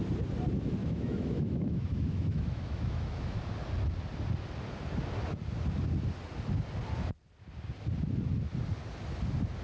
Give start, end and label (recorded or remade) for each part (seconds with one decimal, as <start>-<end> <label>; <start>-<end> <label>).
0.0-0.8 recorded; 0.8-3.4 remade; 3.4-9.6 recorded